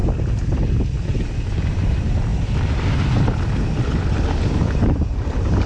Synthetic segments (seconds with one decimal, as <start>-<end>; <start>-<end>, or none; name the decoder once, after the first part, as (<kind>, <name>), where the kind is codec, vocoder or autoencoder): 0.0-0.6 (vocoder, BigVGAN v2)